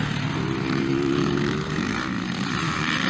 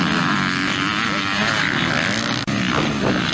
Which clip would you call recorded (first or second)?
second